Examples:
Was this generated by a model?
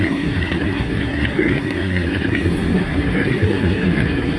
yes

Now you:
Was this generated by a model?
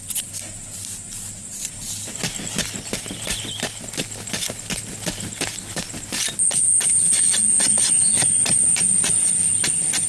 no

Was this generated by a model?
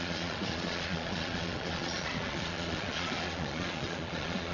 yes